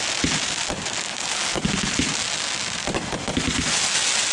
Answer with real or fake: real